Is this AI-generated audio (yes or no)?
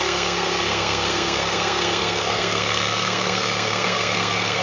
yes